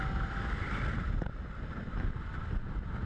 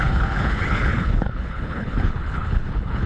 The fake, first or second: second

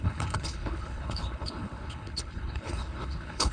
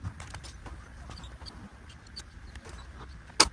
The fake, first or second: first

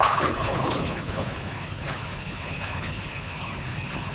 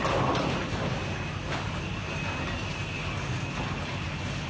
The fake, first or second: first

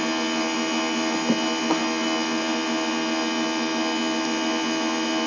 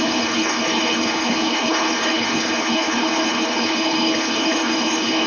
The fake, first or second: second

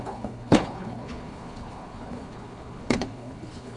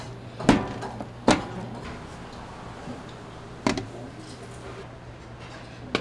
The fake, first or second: first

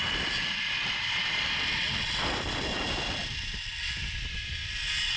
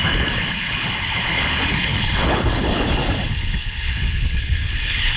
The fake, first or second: second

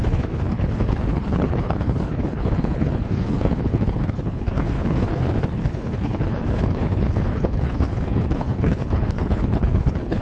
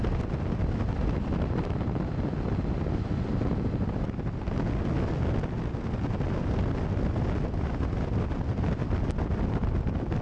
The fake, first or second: first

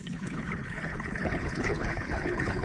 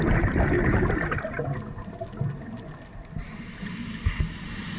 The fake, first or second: first